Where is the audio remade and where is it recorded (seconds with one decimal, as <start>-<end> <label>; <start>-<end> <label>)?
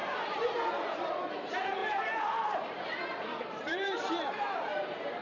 0.0-5.2 remade